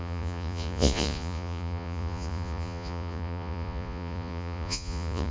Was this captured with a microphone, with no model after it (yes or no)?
no